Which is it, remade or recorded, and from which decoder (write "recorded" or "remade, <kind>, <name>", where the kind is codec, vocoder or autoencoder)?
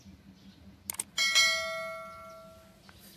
recorded